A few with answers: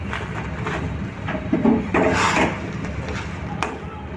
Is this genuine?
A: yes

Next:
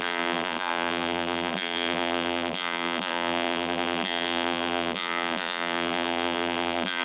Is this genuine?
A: no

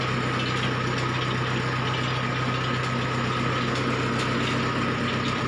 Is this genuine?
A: yes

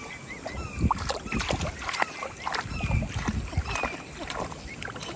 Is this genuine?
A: yes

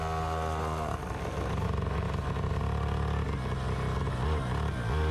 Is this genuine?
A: yes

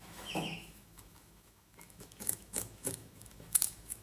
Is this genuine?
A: no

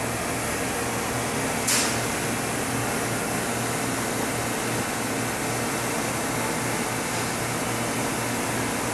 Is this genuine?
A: yes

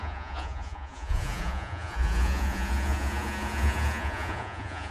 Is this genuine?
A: no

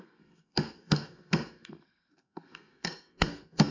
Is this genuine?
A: no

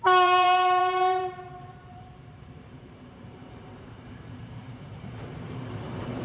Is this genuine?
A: no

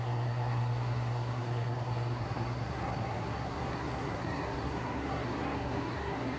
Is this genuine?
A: no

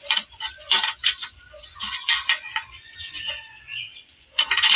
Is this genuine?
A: no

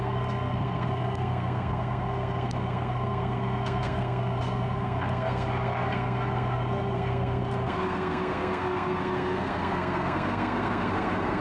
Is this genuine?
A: no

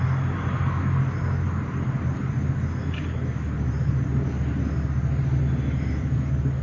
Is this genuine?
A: yes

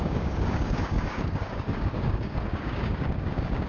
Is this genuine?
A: no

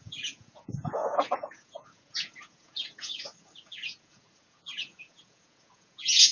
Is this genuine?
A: no